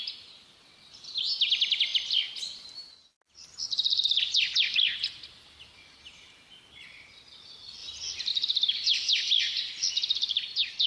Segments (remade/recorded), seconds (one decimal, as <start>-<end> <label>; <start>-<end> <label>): 0.0-10.9 recorded